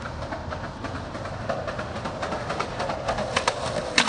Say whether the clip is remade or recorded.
recorded